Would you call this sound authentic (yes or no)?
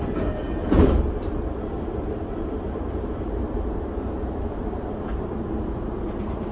no